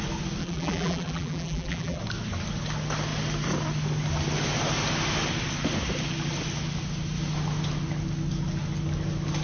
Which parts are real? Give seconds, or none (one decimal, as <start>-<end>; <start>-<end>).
0.0-0.4; 2.0-9.4